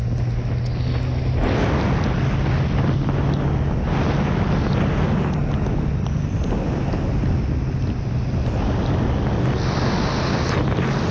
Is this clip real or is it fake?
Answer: real